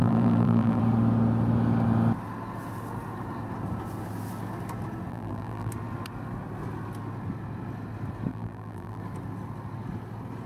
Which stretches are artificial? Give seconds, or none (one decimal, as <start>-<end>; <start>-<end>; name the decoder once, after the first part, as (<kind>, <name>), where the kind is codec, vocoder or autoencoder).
0.0-0.8 (vocoder, BigVGAN v2); 5.1-5.7; 8.3-9.0

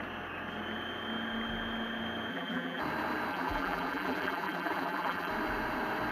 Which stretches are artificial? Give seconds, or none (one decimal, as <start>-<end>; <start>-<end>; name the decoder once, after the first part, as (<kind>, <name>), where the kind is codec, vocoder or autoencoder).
2.3-2.8 (vocoder, BigVGAN v2); 3.3-5.3

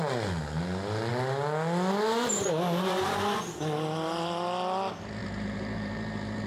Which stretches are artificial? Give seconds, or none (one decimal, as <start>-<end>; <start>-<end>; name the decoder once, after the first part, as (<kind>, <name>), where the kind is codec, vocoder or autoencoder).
5.2-6.5 (vocoder, BigVGAN v2)